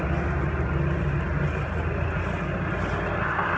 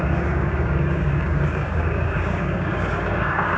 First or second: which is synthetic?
second